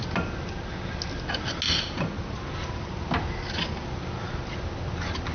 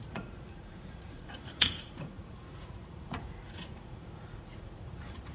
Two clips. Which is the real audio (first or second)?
first